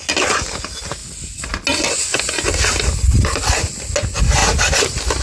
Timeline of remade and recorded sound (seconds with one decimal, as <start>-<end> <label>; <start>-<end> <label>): 0.0-5.2 recorded